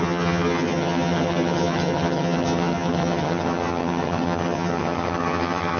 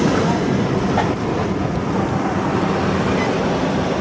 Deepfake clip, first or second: first